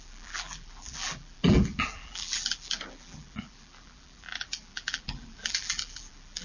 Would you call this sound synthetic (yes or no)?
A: yes